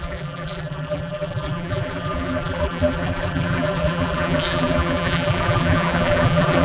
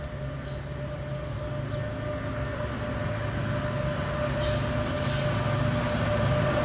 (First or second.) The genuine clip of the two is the second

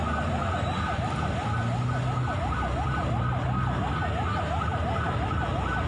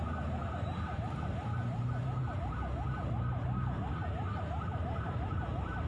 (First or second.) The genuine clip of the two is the first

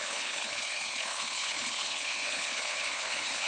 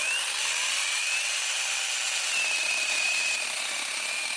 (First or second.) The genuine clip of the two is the second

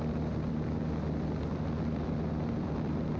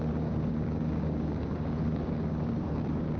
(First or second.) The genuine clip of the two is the first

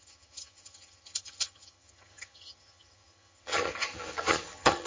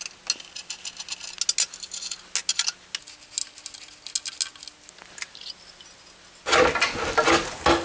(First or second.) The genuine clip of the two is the second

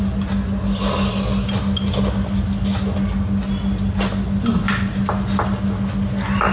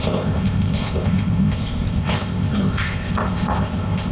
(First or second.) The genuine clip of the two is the first